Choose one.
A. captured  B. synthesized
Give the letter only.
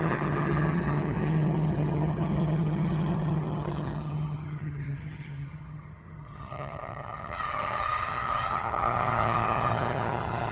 B